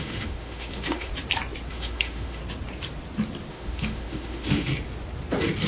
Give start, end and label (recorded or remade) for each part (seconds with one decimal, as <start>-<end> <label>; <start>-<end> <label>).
0.0-1.1 remade; 1.1-1.7 recorded; 1.7-2.4 remade; 2.4-3.5 recorded; 3.5-4.7 remade; 4.7-5.7 recorded